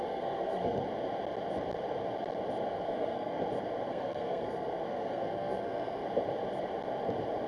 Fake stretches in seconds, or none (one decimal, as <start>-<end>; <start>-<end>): 0.0-0.8; 2.7-3.4; 3.9-6.0